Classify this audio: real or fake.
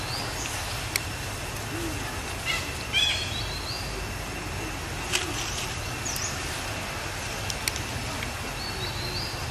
real